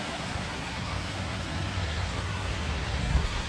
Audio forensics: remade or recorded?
remade